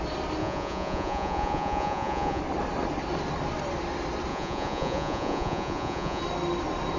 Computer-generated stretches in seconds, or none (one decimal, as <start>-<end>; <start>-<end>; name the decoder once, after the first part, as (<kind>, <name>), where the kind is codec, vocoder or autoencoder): 0.4-2.4 (vocoder, Vocos); 4.3-6.2

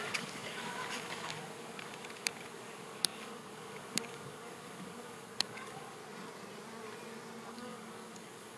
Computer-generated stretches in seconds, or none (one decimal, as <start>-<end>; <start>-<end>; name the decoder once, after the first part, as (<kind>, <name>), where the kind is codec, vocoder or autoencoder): 0.0-6.0 (codec, DAC); 7.5-8.6

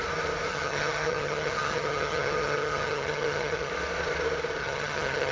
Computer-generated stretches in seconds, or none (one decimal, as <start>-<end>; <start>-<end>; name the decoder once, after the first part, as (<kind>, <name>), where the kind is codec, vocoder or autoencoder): 0.5-3.7 (vocoder, HiFi-GAN); 4.6-5.3

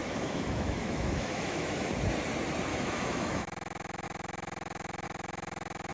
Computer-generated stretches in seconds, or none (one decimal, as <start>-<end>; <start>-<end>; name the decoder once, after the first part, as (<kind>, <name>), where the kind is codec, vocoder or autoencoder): 0.0-1.9 (autoencoder, DAC-VAE); 2.7-5.9

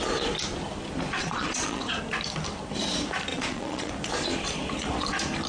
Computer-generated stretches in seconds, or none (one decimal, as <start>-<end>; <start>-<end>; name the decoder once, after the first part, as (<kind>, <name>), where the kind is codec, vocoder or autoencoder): 1.2-2.0 (vocoder, Vocos); 3.3-3.9